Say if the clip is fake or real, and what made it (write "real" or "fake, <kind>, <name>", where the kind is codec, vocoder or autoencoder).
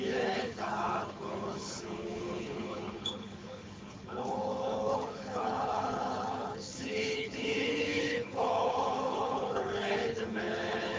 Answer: fake, codec, HILCodec